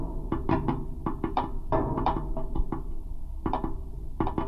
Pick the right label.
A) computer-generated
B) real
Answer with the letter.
A